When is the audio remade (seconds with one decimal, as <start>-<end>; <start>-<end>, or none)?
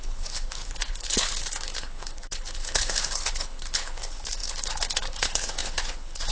0.0-6.3